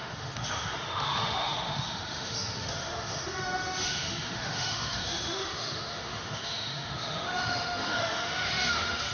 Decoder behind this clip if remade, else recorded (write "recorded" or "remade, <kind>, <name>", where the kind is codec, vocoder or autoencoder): remade, autoencoder, DAC-VAE